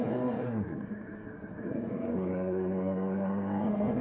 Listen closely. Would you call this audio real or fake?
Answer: fake